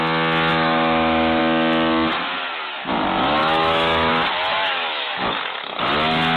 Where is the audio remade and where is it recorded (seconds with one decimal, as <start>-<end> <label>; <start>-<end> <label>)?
0.0-0.5 recorded; 0.5-1.4 remade; 1.4-3.4 recorded; 3.4-4.1 remade; 4.1-4.5 recorded; 4.5-5.8 remade; 5.8-6.4 recorded